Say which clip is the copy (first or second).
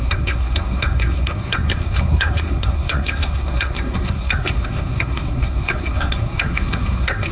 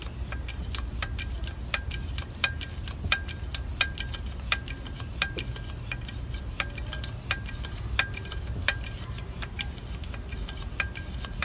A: first